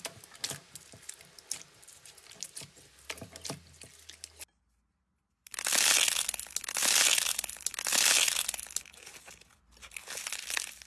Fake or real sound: real